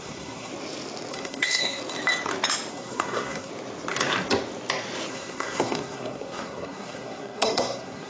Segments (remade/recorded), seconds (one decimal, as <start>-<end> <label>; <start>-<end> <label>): 0.0-0.5 remade; 0.5-1.1 recorded; 1.1-1.8 remade; 1.8-2.7 recorded; 2.7-3.5 remade; 3.5-5.1 recorded; 5.1-8.1 remade